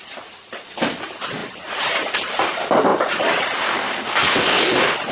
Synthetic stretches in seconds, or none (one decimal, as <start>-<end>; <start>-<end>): 1.4-2.1